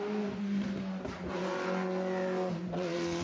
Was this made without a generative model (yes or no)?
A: yes